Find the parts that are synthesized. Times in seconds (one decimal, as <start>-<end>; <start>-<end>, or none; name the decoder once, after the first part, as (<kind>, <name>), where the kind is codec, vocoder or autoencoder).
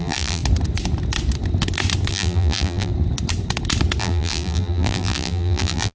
0.0-0.4 (vocoder, BigVGAN v2); 2.1-2.9; 4.0-5.9